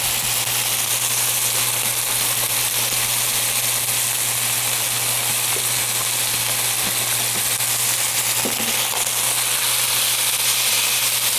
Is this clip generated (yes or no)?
no